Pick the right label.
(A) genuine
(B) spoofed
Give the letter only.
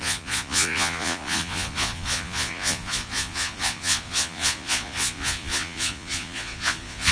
B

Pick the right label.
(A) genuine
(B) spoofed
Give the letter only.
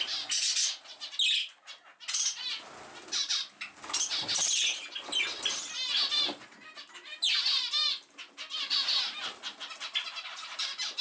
A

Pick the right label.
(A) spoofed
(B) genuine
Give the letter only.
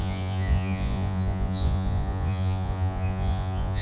A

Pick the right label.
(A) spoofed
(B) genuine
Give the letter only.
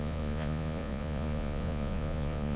A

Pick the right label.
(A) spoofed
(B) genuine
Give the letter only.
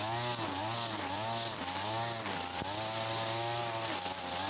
B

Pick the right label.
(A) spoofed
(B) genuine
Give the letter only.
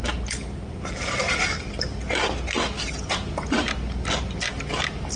B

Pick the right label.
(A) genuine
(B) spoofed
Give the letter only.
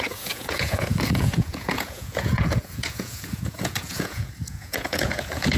B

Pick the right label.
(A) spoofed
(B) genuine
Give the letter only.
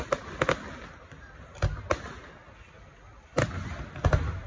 B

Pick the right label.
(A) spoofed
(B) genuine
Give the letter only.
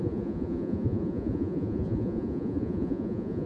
A